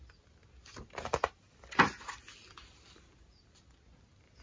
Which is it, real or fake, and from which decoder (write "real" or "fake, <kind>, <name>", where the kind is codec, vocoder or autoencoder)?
real